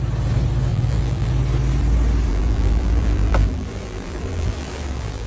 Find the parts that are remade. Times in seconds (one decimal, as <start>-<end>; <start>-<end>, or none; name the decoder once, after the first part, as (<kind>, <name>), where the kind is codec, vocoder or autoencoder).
0.7-1.3 (vocoder, BigVGAN v2); 2.3-5.3